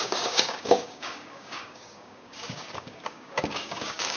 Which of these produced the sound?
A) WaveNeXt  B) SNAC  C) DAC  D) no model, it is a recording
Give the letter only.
C